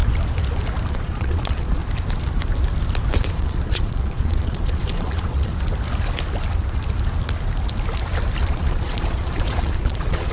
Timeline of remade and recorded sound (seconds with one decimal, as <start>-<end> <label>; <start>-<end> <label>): 0.0-0.9 recorded; 0.9-1.8 remade; 1.8-3.1 recorded; 3.1-5.5 remade; 5.5-8.5 recorded; 8.5-10.3 remade